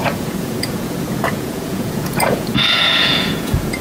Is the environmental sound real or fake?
fake